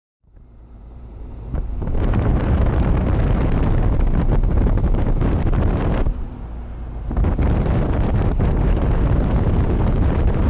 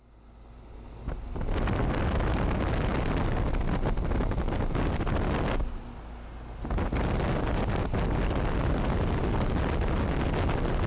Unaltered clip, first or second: second